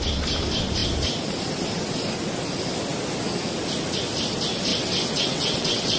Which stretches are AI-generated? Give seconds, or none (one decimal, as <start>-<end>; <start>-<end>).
4.7-6.0